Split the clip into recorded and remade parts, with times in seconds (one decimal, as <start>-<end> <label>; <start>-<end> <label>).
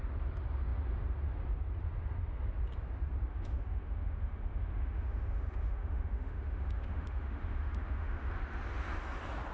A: 0.0-3.3 recorded; 3.3-8.3 remade; 8.3-9.5 recorded